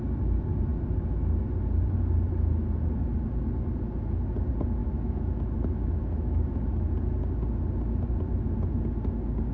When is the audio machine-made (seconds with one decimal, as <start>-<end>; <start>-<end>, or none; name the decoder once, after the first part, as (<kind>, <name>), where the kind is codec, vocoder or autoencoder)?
4.8-6.7 (autoencoder, DAC-VAE)